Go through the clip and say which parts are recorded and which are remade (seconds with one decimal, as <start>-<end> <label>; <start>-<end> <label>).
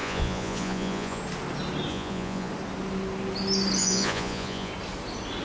0.0-1.2 remade; 1.2-1.9 recorded; 1.9-2.5 remade; 2.5-3.8 recorded; 3.8-4.7 remade; 4.7-5.4 recorded